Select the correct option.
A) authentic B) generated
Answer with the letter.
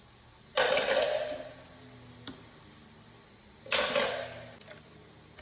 A